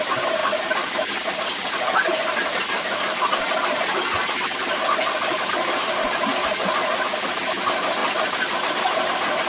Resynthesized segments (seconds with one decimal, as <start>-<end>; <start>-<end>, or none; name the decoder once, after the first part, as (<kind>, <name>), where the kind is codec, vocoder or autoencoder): none

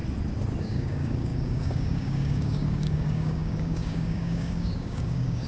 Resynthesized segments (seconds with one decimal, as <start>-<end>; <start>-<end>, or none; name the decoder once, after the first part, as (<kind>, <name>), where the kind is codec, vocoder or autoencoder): 0.6-5.5 (codec, DAC)

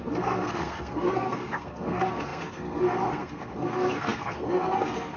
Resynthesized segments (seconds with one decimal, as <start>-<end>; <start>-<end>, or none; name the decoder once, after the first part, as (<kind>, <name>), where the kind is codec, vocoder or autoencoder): 0.0-5.2 (codec, SNAC)

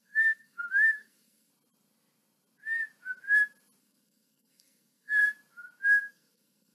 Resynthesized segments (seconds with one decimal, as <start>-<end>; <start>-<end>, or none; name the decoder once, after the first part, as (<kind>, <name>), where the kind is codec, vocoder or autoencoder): 0.0-1.5 (codec, SNAC); 3.8-5.2; 6.1-6.7

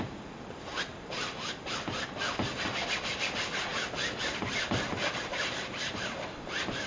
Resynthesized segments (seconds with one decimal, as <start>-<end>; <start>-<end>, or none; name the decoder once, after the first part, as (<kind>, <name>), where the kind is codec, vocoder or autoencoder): 5.3-6.9 (vocoder, BigVGAN v2)